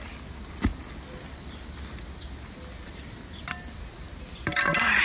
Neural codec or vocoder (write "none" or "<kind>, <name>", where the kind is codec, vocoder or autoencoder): none